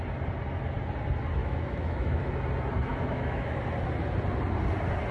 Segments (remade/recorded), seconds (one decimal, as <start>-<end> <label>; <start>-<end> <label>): 0.0-1.4 recorded; 1.4-2.2 remade; 2.2-2.9 recorded; 2.9-3.6 remade; 3.6-5.1 recorded